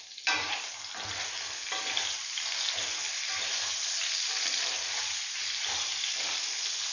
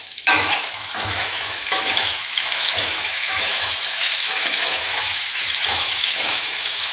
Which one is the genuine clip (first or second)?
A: first